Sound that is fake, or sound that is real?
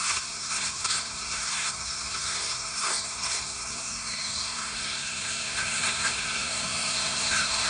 fake